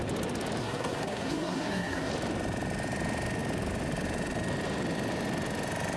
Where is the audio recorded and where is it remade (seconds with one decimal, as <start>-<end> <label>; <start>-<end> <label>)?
0.0-0.6 recorded; 0.6-2.1 remade; 2.1-6.0 recorded

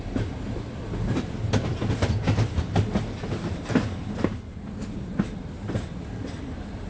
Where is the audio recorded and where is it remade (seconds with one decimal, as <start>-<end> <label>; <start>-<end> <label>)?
0.0-6.9 recorded

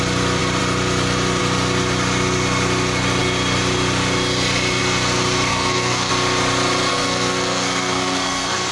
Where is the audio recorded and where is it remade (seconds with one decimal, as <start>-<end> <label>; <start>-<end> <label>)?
0.0-5.5 recorded; 5.5-6.1 remade; 6.1-6.9 recorded; 6.9-8.7 remade

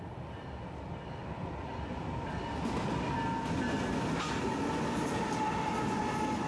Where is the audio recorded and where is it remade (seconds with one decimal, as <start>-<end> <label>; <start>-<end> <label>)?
0.0-6.5 recorded

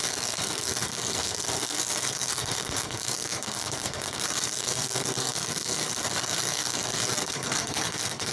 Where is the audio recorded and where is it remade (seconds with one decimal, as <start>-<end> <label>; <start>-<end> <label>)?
0.0-8.3 remade

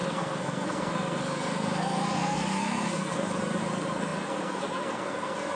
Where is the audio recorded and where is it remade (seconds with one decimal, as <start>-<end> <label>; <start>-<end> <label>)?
0.0-5.6 remade

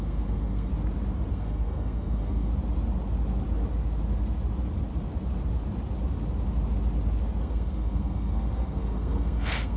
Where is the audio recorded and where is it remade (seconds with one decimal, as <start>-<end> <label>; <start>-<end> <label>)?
0.0-0.7 remade; 0.7-1.3 recorded; 1.3-2.5 remade; 2.5-7.4 recorded; 7.4-9.8 remade